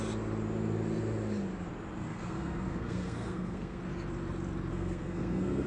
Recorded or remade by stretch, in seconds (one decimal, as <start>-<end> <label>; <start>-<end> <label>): 0.0-2.1 recorded; 2.1-3.8 remade; 3.8-4.7 recorded; 4.7-5.7 remade